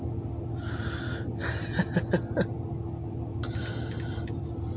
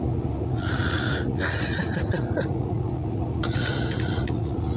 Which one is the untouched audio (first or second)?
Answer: first